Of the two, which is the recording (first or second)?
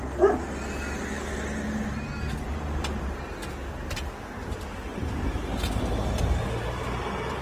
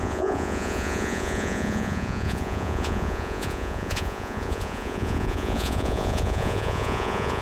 first